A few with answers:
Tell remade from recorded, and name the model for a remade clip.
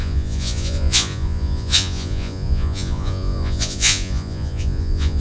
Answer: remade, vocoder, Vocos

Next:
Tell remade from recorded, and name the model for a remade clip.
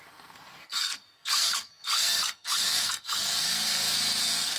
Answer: remade, codec, SNAC